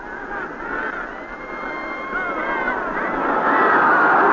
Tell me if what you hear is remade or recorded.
recorded